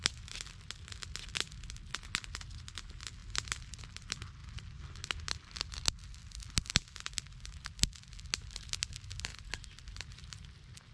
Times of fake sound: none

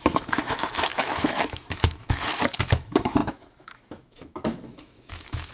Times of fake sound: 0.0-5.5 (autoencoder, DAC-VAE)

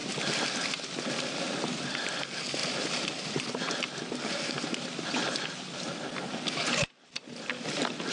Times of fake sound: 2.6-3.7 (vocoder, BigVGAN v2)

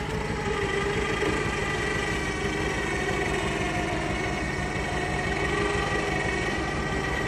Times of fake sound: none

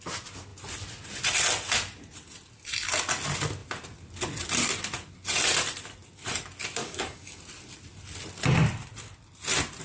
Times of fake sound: 6.8-7.4 (codec, DAC)

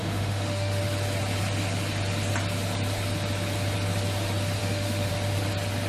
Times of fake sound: 0.0-0.8 (autoencoder, DAC-VAE); 4.6-5.1

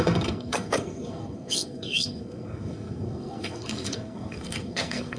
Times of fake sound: 0.0-5.2 (codec, SNAC)

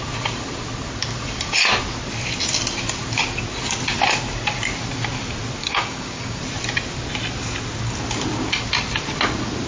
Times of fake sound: 5.6-6.4 (codec, DAC)